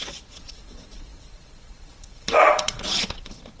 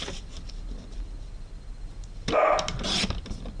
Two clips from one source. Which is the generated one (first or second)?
first